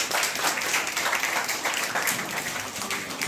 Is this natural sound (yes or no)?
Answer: no